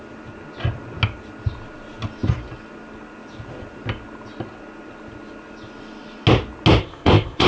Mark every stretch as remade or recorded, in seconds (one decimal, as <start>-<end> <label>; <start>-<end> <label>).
0.0-6.8 recorded; 6.8-7.5 remade